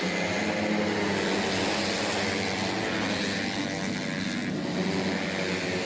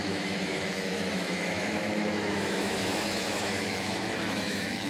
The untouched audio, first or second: first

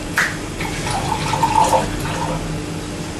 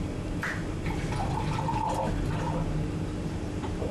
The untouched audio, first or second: first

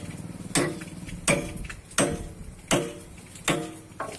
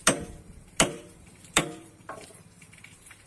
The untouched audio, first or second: first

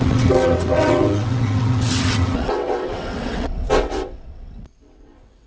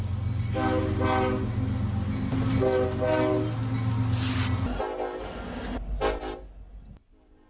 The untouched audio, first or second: second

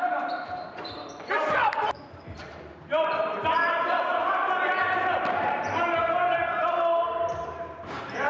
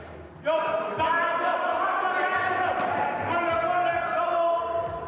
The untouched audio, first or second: second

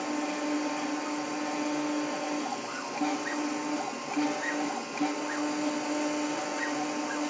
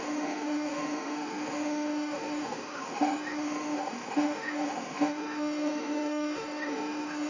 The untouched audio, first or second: first